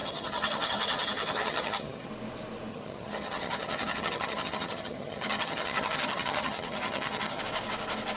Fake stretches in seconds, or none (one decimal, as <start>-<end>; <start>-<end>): 0.0-2.1; 2.7-7.4